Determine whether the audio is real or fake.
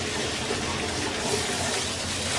real